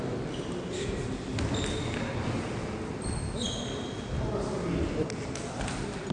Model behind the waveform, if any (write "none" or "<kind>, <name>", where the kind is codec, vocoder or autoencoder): none